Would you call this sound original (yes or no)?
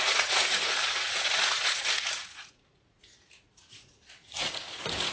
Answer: no